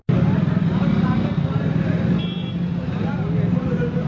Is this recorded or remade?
recorded